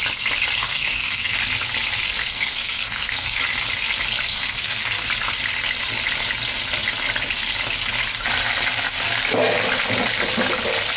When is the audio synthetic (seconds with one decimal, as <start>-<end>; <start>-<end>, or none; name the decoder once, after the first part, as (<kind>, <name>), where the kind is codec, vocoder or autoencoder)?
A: 0.6-1.4 (codec, SNAC); 2.2-3.4; 4.3-5.1